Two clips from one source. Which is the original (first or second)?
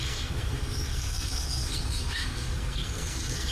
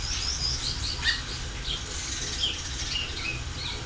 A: second